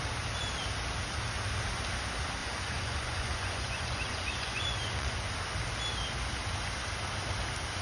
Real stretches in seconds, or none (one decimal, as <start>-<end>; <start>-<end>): 0.0-2.4; 5.2-7.8